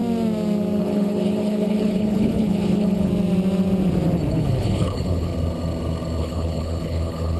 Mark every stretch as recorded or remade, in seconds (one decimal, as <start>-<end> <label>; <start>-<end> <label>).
0.0-0.8 recorded; 0.8-3.1 remade; 3.1-4.3 recorded; 4.3-5.3 remade; 5.3-6.2 recorded; 6.2-7.4 remade